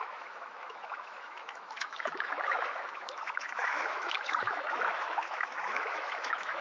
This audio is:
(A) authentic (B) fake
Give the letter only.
B